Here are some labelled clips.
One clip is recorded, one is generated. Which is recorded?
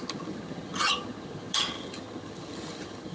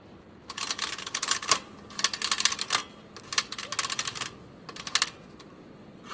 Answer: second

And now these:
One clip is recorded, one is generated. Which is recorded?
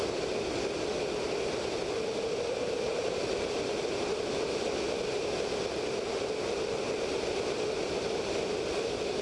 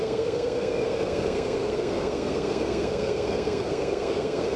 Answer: first